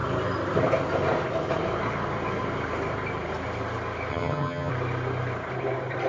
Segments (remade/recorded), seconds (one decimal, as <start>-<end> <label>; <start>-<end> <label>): 0.0-4.1 recorded; 4.1-4.7 remade; 4.7-6.1 recorded